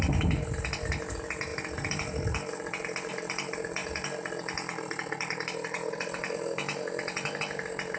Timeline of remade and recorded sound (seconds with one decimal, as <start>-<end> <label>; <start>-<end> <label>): 0.0-8.0 recorded